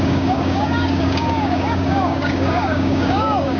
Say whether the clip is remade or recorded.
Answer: remade